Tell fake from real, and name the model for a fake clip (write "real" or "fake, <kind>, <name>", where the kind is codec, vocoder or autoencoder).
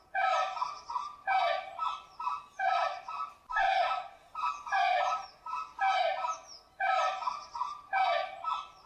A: real